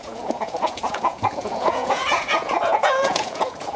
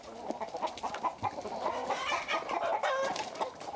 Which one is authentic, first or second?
second